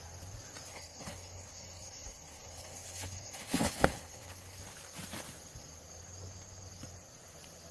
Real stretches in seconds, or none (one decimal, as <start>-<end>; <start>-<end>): 0.0-0.7; 4.6-7.7